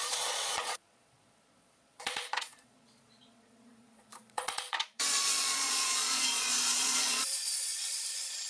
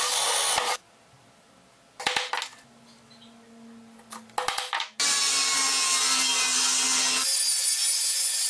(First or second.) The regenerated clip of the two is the first